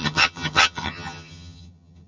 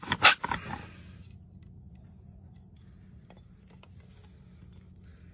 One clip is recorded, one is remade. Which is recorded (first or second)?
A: second